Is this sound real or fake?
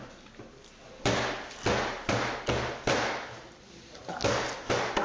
real